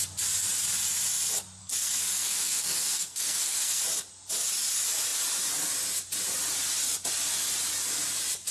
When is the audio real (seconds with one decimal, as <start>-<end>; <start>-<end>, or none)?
0.0-1.6; 3.8-8.5